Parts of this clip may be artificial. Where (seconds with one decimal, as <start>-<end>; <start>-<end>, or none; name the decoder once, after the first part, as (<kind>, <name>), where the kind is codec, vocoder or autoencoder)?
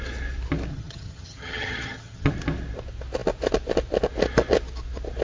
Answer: 0.7-2.3 (vocoder, HiFi-GAN)